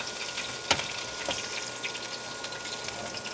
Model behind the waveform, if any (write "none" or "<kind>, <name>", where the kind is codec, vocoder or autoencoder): none